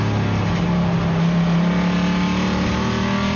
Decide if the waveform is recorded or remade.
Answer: recorded